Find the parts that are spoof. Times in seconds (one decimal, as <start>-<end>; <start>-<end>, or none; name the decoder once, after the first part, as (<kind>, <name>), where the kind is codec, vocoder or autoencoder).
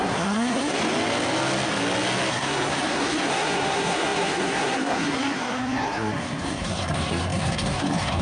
0.0-0.8 (codec, SNAC); 2.3-8.2